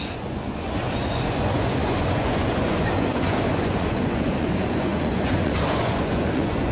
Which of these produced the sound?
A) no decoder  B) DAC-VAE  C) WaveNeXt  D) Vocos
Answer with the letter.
D